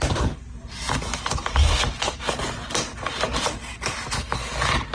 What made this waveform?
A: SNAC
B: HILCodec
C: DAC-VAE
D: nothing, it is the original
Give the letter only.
D